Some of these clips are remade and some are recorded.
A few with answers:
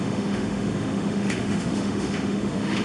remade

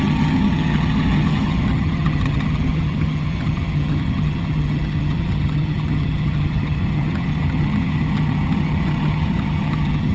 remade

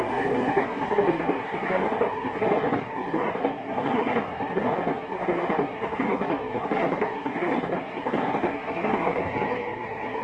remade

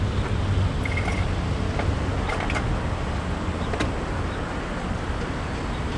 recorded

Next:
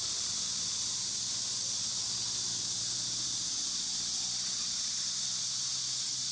remade